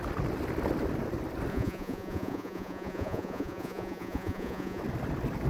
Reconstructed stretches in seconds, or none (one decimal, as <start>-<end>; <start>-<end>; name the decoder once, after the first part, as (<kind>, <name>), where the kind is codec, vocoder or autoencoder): 1.5-4.8 (vocoder, Vocos)